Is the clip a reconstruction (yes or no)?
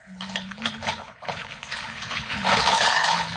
yes